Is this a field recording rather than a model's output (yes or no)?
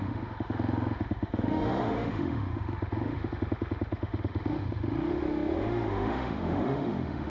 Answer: no